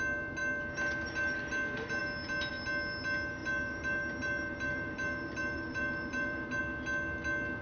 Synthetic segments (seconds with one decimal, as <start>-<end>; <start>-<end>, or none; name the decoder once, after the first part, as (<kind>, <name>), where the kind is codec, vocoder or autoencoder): 3.4-6.6 (vocoder, BigVGAN v2)